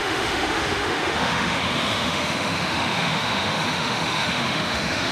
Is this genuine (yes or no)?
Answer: no